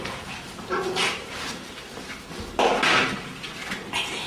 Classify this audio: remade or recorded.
recorded